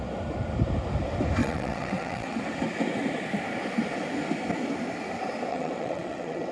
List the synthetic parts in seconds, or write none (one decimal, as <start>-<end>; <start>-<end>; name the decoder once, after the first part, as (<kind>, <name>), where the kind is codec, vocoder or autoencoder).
1.4-2.4 (vocoder, WaveNeXt); 5.5-6.5